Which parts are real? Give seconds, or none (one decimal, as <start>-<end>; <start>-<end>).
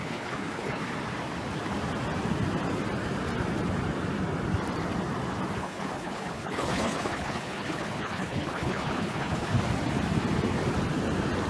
0.8-5.6; 9.6-11.5